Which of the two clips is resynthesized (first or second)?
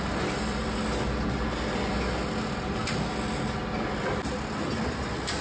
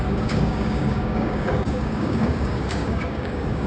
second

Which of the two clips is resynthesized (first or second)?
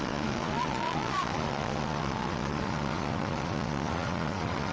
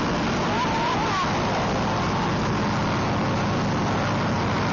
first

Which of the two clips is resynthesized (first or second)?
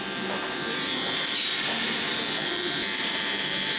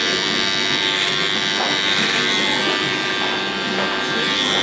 first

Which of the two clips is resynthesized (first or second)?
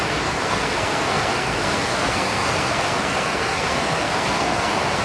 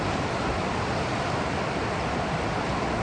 first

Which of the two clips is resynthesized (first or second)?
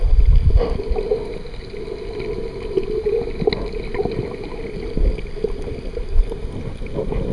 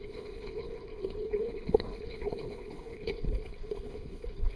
second